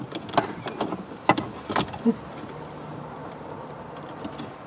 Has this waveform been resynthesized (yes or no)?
no